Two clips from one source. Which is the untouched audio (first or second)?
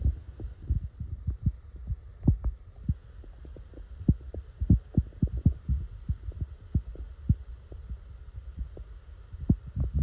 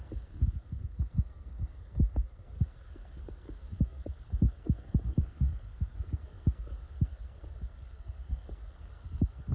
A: first